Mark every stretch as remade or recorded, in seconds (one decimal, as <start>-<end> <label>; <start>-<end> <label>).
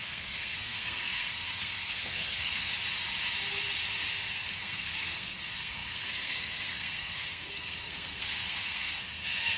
0.0-2.7 remade; 2.7-4.3 recorded; 4.3-9.6 remade